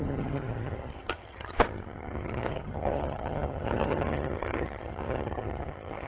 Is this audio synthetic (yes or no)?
yes